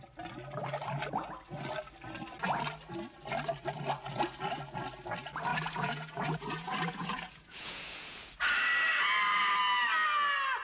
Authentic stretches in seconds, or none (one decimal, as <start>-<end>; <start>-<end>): 0.0-5.5; 8.3-10.6